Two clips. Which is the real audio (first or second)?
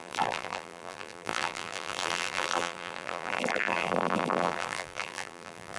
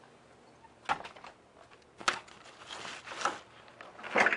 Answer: second